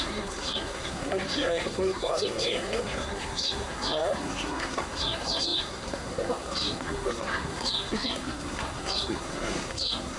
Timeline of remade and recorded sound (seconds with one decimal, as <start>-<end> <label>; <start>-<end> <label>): 0.0-10.2 remade